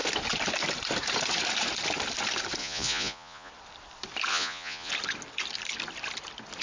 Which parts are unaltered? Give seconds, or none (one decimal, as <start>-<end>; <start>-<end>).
0.0-2.6; 3.5-4.3; 4.9-6.6